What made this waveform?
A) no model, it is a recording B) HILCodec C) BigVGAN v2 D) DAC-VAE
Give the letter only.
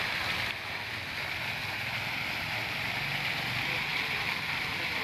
A